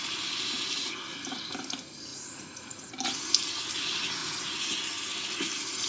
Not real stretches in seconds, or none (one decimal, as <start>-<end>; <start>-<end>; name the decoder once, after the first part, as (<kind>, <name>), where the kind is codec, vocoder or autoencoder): 2.1-2.9 (vocoder, Vocos); 4.2-4.8